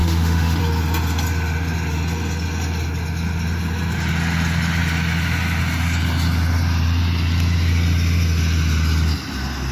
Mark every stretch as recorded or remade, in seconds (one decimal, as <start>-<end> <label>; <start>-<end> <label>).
0.0-0.6 remade; 0.6-9.7 recorded